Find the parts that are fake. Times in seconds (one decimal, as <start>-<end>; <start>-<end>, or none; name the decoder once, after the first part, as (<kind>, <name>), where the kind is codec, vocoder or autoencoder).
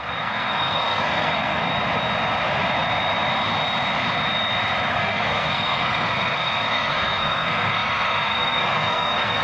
0.0-1.7 (codec, SNAC); 4.9-9.4